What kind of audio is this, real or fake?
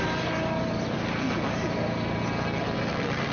real